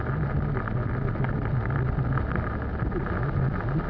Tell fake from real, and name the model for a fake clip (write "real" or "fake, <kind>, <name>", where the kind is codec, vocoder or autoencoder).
real